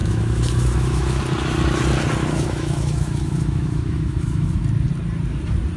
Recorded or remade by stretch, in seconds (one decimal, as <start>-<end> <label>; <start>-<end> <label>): 0.0-1.2 remade; 1.2-2.2 recorded; 2.2-4.6 remade; 4.6-5.8 recorded